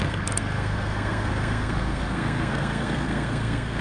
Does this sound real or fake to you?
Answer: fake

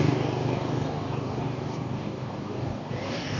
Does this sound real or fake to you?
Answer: fake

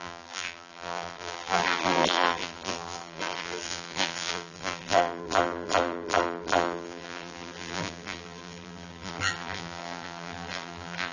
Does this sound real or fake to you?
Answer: fake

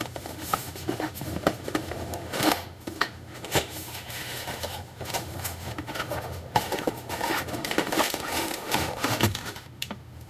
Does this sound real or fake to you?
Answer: fake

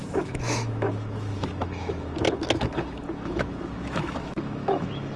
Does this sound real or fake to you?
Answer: fake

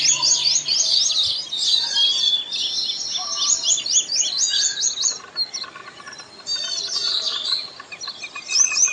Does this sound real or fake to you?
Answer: real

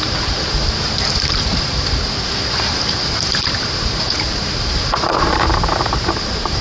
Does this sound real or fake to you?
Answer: fake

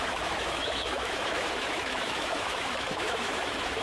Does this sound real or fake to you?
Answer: fake